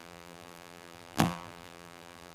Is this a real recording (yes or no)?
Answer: no